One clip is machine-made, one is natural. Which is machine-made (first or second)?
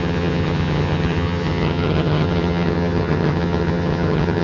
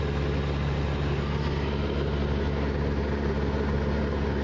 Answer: first